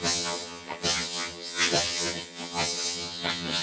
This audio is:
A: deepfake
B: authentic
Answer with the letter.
A